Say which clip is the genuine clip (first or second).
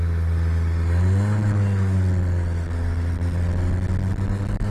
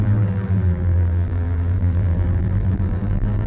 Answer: first